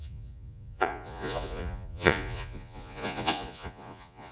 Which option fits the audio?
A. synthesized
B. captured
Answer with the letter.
A